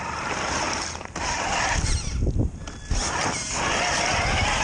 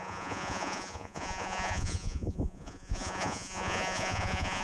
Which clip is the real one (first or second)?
first